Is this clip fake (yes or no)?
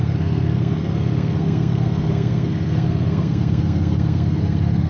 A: yes